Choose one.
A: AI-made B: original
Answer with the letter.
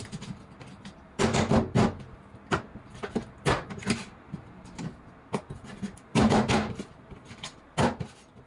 B